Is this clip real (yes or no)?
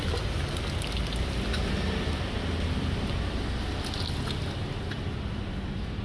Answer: yes